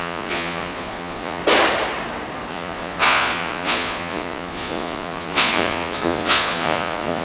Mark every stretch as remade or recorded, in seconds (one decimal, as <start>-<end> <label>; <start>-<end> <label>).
0.0-1.4 remade; 1.4-2.5 recorded; 2.5-7.2 remade